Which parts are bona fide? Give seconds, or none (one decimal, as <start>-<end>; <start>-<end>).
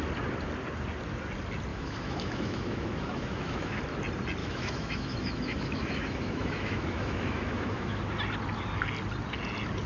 0.0-1.7; 3.8-4.4; 8.0-9.9